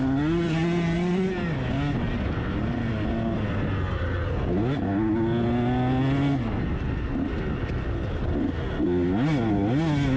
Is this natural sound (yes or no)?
yes